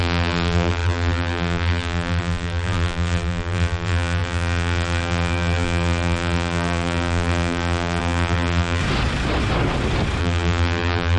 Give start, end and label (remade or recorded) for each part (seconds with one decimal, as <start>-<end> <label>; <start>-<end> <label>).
0.0-8.8 remade; 8.8-10.2 recorded; 10.2-11.2 remade